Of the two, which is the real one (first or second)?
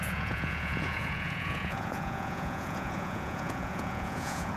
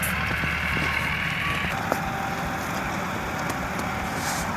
second